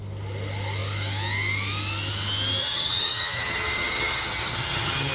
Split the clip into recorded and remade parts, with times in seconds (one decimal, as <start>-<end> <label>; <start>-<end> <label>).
0.0-2.6 recorded; 2.6-5.1 remade